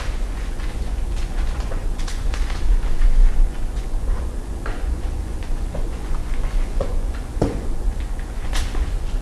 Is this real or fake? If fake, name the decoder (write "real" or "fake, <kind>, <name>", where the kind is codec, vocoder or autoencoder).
fake, vocoder, Vocos